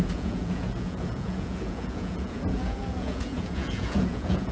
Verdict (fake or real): fake